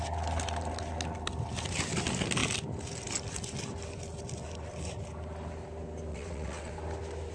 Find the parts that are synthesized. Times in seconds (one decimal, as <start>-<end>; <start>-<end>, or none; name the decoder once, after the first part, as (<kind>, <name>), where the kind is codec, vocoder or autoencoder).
6.1-6.7 (vocoder, WaveNeXt)

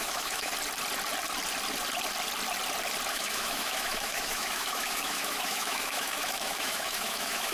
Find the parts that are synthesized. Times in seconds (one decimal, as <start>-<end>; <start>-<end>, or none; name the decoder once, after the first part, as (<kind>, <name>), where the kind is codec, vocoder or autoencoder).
0.0-0.5 (autoencoder, DAC-VAE); 3.1-7.5

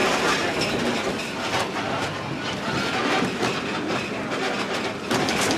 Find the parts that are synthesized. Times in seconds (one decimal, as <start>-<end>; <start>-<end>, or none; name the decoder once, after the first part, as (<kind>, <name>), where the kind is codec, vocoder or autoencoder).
none

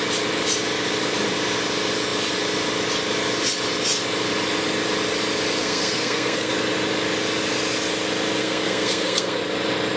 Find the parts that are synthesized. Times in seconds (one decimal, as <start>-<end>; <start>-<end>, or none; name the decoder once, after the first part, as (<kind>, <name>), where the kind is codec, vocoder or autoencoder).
5.6-6.5 (codec, SNAC); 8.4-9.4